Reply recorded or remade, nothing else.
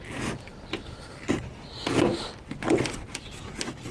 recorded